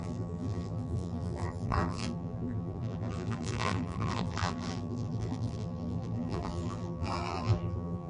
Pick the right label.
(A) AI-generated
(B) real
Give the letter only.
A